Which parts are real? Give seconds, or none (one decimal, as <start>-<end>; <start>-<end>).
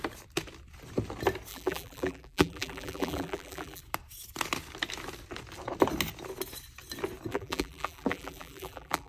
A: 0.0-1.5; 3.8-7.3